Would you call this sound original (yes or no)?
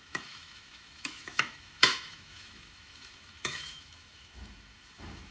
no